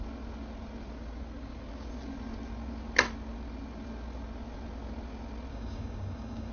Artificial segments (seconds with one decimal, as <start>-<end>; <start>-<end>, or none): 5.5-6.5